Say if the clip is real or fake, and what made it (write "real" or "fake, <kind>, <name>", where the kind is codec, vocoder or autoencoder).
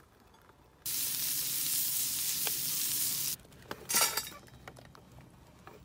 real